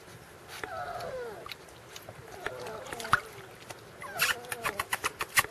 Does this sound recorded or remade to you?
recorded